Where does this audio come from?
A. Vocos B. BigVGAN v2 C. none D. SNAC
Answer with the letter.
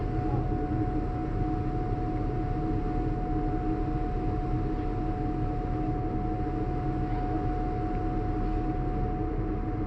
C